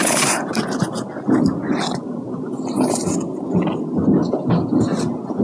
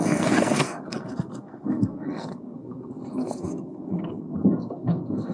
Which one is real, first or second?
first